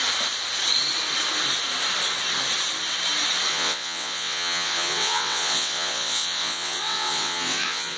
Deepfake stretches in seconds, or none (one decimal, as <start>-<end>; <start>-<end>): 3.5-8.0

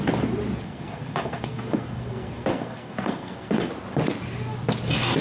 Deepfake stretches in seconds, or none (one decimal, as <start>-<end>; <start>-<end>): 0.6-3.7

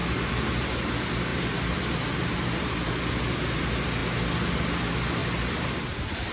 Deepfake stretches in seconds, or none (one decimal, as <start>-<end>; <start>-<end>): 0.0-0.9; 1.3-2.9; 5.2-6.3

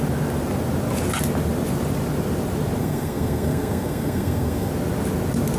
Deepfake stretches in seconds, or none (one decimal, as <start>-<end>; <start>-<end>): 2.8-4.7

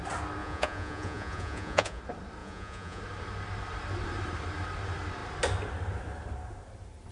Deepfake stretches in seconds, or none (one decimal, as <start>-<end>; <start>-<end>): 0.4-2.0; 2.4-3.0

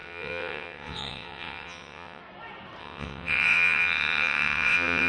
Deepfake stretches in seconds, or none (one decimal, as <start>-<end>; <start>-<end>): 0.0-2.2; 2.8-5.1

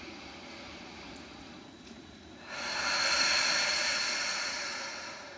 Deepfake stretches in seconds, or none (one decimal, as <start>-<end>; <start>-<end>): 0.0-2.7; 3.6-5.4

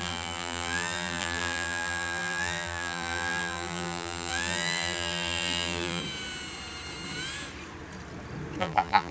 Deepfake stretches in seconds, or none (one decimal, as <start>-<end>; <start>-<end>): 0.0-6.0; 8.6-9.1